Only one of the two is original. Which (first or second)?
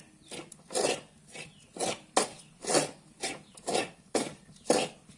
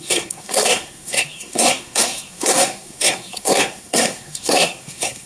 first